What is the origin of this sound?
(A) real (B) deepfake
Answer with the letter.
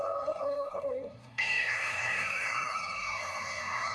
B